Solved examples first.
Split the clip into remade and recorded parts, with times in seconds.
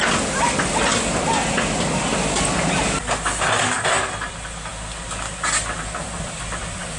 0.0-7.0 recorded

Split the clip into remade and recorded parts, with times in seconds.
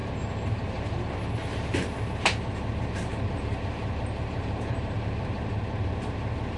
0.0-1.0 remade; 1.0-3.1 recorded; 3.1-5.3 remade; 5.3-6.6 recorded